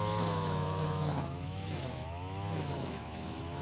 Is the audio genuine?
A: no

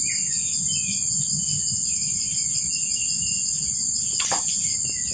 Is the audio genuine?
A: yes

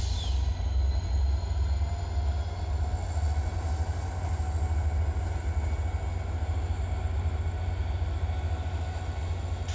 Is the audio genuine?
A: yes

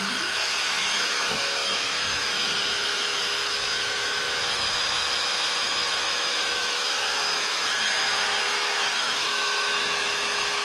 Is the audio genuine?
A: no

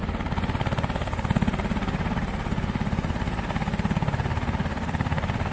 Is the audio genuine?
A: yes